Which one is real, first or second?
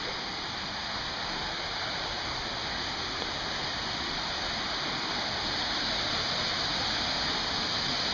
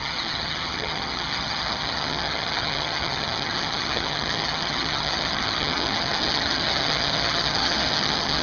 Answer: first